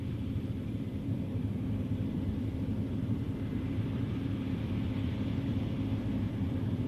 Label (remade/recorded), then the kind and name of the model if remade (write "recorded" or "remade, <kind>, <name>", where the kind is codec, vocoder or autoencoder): remade, vocoder, BigVGAN v2